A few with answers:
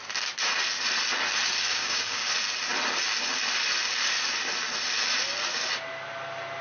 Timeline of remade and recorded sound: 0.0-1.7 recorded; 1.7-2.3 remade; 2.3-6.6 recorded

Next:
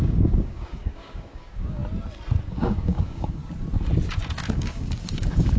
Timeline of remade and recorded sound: 0.0-1.8 remade; 1.8-2.4 recorded; 2.4-3.4 remade; 3.4-4.5 recorded; 4.5-5.6 remade